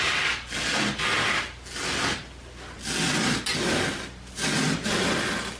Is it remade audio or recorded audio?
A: recorded